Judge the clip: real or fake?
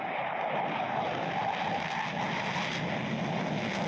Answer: real